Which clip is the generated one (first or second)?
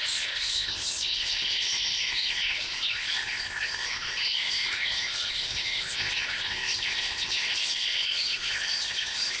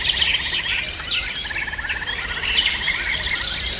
first